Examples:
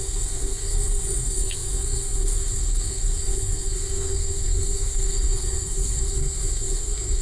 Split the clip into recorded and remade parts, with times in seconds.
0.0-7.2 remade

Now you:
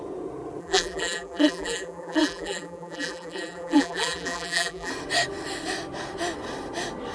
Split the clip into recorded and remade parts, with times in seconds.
0.0-0.6 recorded; 0.6-4.9 remade; 4.9-7.1 recorded

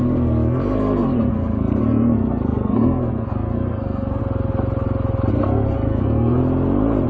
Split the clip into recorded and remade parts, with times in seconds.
0.0-4.2 remade; 4.2-5.3 recorded; 5.3-6.4 remade; 6.4-7.1 recorded

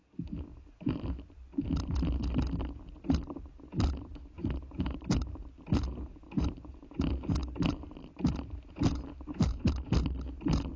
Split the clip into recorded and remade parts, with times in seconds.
0.0-4.4 recorded; 4.4-5.2 remade; 5.2-10.8 recorded

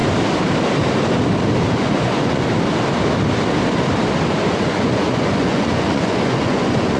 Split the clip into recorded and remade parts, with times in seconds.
0.0-1.8 recorded; 1.8-2.5 remade; 2.5-4.6 recorded; 4.6-7.0 remade

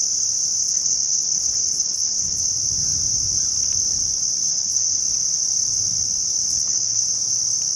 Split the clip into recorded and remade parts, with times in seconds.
0.0-0.6 recorded; 0.6-2.4 remade; 2.4-4.5 recorded; 4.5-5.0 remade; 5.0-6.5 recorded; 6.5-7.0 remade; 7.0-7.8 recorded

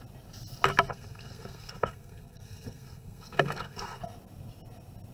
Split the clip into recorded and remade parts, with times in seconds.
0.0-0.9 recorded; 0.9-4.0 remade; 4.0-5.1 recorded